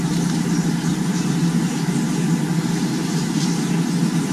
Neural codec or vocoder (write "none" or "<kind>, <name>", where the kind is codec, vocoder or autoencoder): none